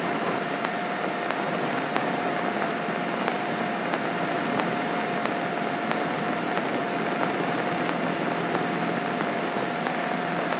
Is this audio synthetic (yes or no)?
no